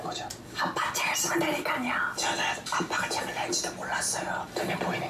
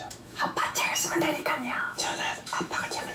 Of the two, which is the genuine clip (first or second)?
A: first